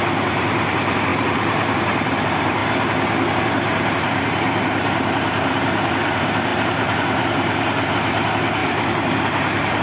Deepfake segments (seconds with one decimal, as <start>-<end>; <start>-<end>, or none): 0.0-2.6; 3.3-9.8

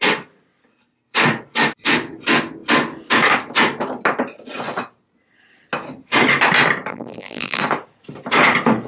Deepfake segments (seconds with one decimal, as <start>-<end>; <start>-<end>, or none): 6.9-7.6

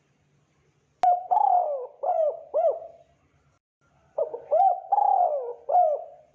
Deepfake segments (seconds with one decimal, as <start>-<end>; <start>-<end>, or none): 1.9-3.0

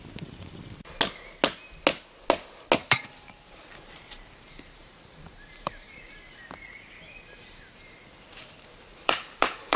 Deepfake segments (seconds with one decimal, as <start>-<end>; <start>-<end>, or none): 2.8-6.3; 8.9-9.8

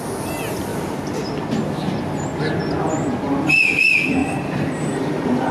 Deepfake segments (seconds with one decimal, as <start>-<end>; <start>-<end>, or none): 4.2-4.7

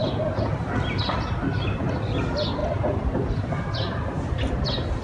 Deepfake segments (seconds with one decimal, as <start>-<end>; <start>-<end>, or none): none

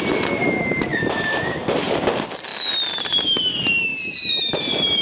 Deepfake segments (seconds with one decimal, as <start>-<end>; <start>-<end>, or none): 0.9-1.9; 3.9-4.6

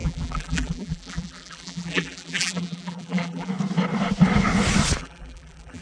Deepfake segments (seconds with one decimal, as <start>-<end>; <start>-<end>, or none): 0.0-3.5; 5.0-5.8